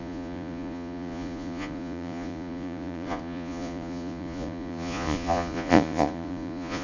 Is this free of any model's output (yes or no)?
no